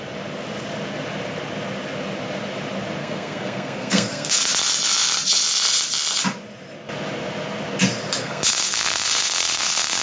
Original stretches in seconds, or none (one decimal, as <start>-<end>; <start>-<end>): 0.0-3.0; 4.4-8.2